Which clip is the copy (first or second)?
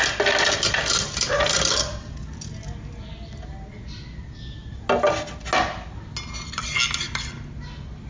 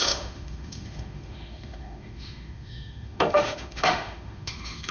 second